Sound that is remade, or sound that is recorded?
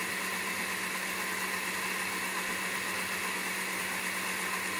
recorded